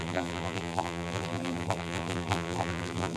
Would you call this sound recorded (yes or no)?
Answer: no